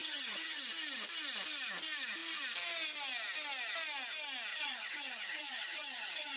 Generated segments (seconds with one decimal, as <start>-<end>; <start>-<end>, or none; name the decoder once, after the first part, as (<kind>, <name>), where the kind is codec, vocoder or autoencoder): 0.0-0.6 (vocoder, HiFi-GAN); 4.5-6.4